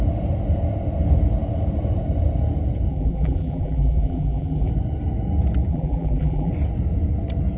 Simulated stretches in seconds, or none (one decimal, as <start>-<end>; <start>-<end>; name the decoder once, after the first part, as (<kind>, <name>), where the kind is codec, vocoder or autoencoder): 2.9-4.7 (vocoder, BigVGAN v2); 5.7-6.5